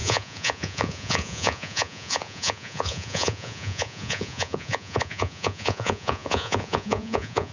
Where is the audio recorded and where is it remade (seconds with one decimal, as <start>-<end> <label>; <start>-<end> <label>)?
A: 0.0-7.5 remade